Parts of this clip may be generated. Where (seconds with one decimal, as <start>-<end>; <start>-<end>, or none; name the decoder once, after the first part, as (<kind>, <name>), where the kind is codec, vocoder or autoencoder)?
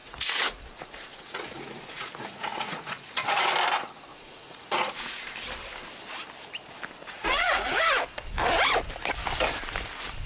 0.0-3.4 (vocoder, Vocos); 4.1-5.2; 7.0-7.8